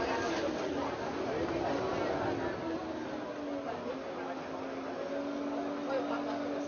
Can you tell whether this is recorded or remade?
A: recorded